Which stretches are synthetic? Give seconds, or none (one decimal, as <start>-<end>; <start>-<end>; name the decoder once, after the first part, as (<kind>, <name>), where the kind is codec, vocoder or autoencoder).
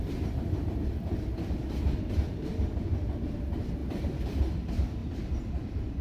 0.0-2.8 (vocoder, BigVGAN v2); 3.8-4.4; 5.0-6.0